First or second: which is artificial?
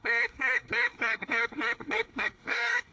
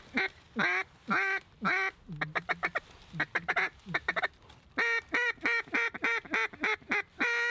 first